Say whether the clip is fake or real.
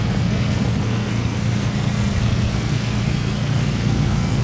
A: fake